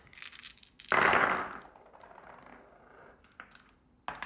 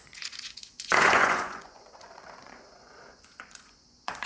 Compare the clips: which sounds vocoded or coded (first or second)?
second